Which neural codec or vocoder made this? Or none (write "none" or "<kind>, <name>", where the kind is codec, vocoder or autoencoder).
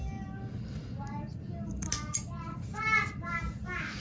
none